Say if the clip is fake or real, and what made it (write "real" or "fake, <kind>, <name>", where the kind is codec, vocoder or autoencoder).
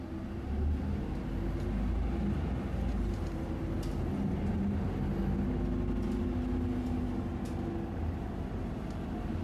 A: real